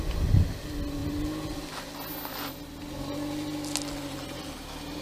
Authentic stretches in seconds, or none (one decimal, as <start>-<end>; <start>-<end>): 0.0-5.0

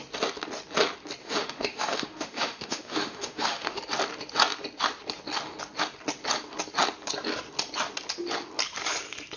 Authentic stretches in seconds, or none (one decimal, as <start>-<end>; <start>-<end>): 0.0-1.2; 3.8-9.4